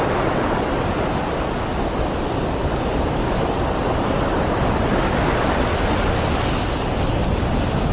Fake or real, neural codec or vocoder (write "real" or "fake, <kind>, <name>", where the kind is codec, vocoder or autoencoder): real